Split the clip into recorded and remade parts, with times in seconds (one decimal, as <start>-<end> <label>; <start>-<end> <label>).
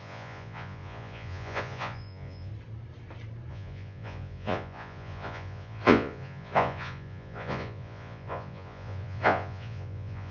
0.0-2.5 remade; 2.5-3.5 recorded; 3.5-10.3 remade